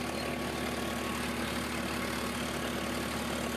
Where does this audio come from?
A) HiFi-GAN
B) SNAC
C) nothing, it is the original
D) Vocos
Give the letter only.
C